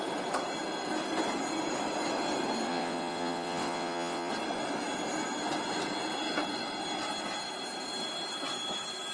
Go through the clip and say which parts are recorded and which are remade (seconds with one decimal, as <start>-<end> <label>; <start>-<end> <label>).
0.0-2.7 recorded; 2.7-4.3 remade; 4.3-9.1 recorded

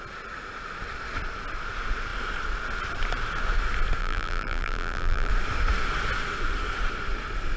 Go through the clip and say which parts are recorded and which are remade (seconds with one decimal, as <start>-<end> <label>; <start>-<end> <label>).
0.0-4.0 recorded; 4.0-5.3 remade; 5.3-7.6 recorded

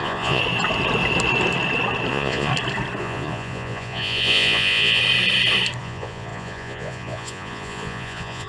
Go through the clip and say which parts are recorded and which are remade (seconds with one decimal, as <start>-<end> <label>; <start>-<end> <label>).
0.0-0.4 remade; 0.4-2.1 recorded; 2.1-2.5 remade; 2.5-3.0 recorded; 3.0-5.0 remade; 5.0-5.8 recorded; 5.8-8.5 remade

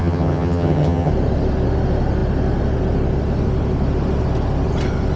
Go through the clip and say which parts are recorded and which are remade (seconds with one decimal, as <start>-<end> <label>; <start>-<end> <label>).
0.0-1.1 remade; 1.1-5.2 recorded

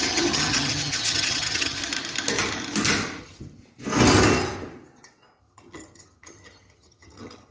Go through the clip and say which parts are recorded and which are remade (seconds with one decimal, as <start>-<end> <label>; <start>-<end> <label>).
0.0-1.8 remade; 1.8-3.2 recorded; 3.2-3.6 remade; 3.6-5.4 recorded; 5.4-7.5 remade

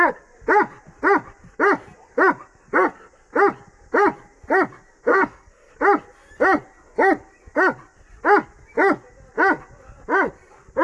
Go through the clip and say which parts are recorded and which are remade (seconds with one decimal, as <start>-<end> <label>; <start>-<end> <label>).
0.0-5.1 recorded; 5.1-5.7 remade; 5.7-10.8 recorded